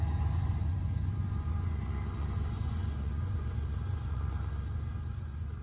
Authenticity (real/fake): fake